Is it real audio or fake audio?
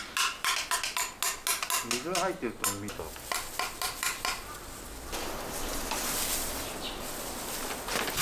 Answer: real